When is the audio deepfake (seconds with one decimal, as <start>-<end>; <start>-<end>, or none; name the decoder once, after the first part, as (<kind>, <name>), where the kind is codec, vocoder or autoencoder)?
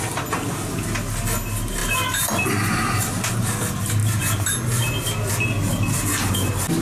none